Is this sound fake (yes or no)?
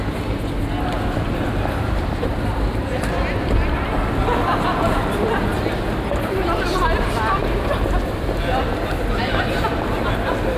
no